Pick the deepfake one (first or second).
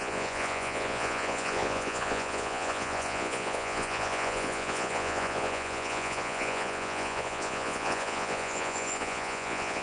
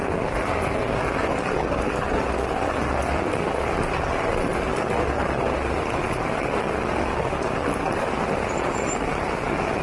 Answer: first